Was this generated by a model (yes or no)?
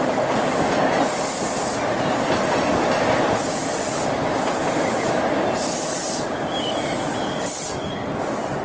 no